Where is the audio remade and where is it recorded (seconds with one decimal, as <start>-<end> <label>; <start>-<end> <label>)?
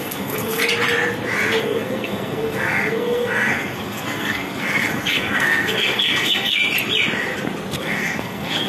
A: 0.0-0.6 remade; 0.6-1.6 recorded; 1.6-6.6 remade; 6.6-7.8 recorded; 7.8-8.7 remade